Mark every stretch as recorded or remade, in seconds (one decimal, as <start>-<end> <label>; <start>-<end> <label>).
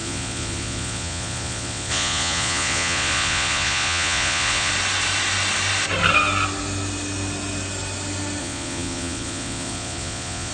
0.0-4.7 remade; 4.7-8.4 recorded; 8.4-10.5 remade